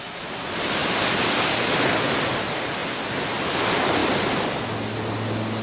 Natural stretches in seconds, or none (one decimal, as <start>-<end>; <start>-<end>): 0.0-5.6